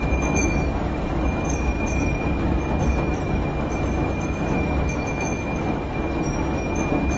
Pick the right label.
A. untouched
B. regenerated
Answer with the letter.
B